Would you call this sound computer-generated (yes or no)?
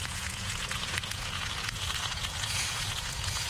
yes